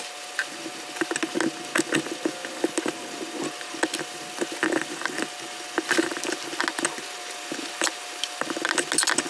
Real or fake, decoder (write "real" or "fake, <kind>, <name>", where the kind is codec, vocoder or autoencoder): real